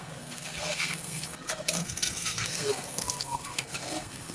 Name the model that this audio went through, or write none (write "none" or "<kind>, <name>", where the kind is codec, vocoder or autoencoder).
codec, SNAC